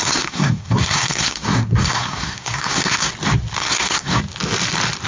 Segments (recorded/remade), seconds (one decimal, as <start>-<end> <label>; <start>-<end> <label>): 0.0-3.1 remade; 3.1-3.6 recorded; 3.6-4.2 remade; 4.2-5.1 recorded

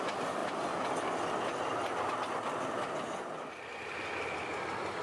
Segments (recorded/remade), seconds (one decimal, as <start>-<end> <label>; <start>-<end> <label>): 0.0-5.0 recorded

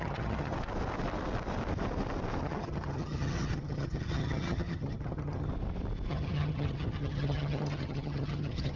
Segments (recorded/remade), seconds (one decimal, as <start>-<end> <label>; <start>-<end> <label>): 0.0-0.5 remade; 0.5-2.4 recorded; 2.4-5.5 remade; 5.5-6.1 recorded; 6.1-8.8 remade

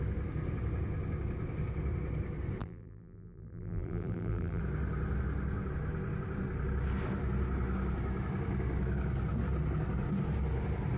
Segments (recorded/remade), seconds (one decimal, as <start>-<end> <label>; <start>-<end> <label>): 0.0-2.6 recorded; 2.6-4.6 remade; 4.6-11.0 recorded

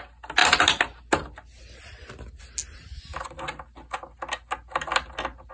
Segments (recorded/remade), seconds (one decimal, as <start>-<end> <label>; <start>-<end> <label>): 0.0-5.5 recorded

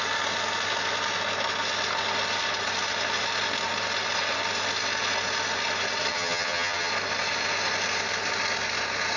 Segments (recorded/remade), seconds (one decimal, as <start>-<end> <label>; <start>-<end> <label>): 0.0-6.1 recorded; 6.1-6.9 remade; 6.9-9.2 recorded

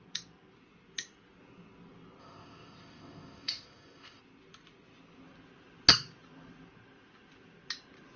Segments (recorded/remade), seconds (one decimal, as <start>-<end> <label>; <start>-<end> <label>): 0.0-2.2 recorded; 2.2-4.2 remade; 4.2-8.2 recorded